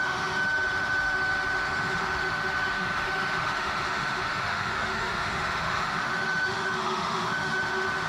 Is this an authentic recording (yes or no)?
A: no